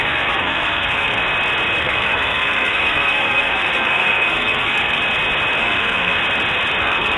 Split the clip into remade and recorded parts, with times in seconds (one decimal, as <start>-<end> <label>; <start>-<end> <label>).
0.0-1.2 remade; 1.2-1.8 recorded; 1.8-5.0 remade; 5.0-5.6 recorded; 5.6-6.2 remade; 6.2-6.8 recorded; 6.8-7.2 remade